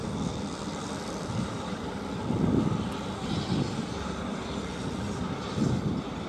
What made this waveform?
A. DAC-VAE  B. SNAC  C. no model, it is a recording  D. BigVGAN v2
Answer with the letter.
C